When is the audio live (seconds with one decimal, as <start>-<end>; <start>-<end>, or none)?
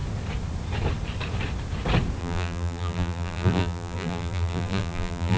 0.0-2.2